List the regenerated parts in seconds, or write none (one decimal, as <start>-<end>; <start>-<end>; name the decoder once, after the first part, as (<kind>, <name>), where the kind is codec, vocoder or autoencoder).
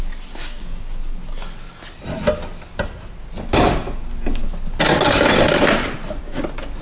0.4-1.0 (codec, DAC)